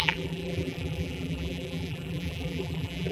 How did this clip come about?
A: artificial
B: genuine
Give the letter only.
A